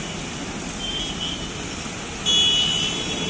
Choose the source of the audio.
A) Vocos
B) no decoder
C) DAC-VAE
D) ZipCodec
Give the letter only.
B